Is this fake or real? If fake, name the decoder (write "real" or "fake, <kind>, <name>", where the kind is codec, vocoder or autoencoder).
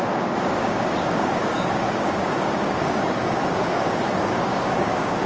fake, codec, DAC